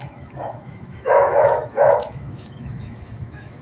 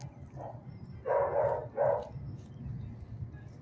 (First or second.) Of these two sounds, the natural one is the second